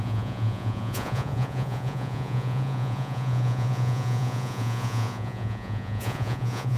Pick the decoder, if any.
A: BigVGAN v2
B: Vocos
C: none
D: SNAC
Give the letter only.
B